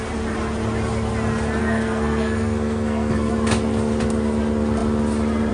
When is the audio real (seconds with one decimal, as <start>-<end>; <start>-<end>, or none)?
0.0-1.6; 3.3-5.5